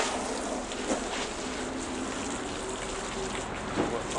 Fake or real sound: real